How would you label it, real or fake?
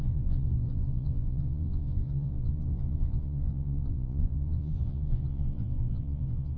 fake